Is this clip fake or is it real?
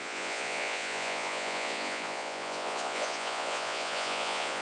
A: fake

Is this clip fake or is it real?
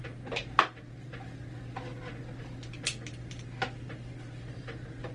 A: real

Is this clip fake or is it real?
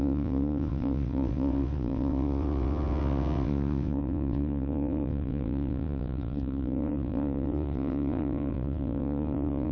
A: fake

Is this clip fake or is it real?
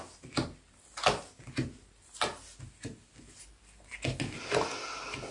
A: real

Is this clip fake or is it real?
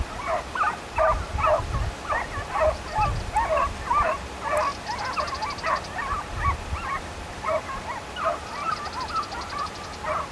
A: real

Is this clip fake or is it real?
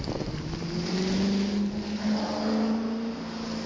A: real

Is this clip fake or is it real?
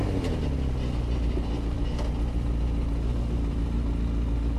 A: real